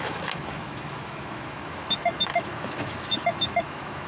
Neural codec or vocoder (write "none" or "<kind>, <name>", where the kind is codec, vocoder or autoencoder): autoencoder, DAC-VAE